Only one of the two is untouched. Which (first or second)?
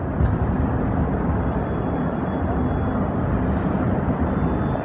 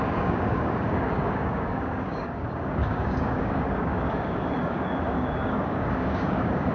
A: first